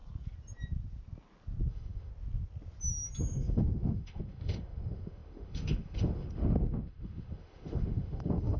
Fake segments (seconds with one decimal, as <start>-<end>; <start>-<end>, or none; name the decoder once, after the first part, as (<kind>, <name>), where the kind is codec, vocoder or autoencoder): 1.7-2.1 (autoencoder, DAC-VAE); 3.2-8.6